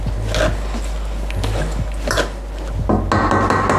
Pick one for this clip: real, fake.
real